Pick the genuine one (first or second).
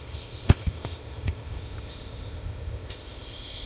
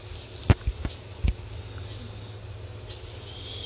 second